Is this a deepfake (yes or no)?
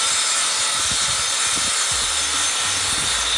no